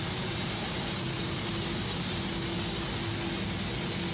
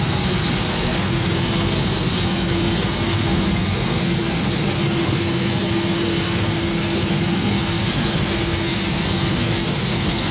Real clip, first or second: first